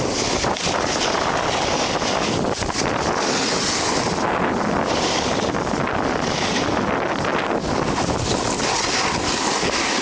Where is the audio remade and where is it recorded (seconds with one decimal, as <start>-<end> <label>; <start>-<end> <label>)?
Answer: 0.0-10.0 recorded